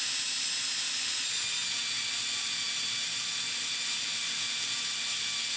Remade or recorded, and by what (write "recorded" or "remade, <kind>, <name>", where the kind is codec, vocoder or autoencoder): recorded